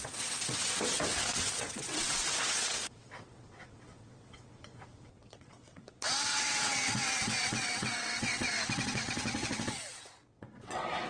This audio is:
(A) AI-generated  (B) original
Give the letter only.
A